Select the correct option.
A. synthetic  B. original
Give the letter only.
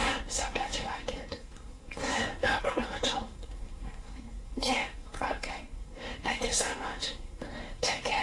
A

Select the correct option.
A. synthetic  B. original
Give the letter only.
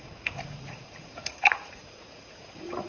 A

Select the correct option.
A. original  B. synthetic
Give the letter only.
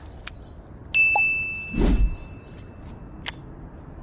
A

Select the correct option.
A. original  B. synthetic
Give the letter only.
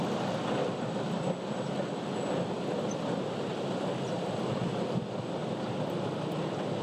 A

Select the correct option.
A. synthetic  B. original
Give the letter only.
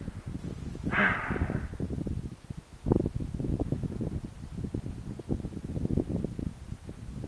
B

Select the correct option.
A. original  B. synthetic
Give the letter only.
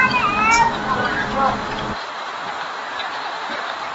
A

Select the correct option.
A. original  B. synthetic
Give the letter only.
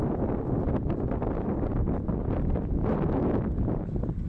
A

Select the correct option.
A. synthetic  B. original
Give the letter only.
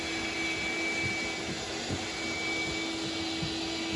B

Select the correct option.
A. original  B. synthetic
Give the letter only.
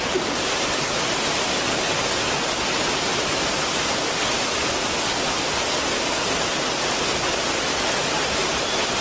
A